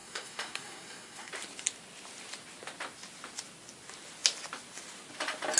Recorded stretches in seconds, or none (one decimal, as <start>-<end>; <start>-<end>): 1.3-5.6